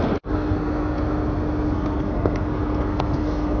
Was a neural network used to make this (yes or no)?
yes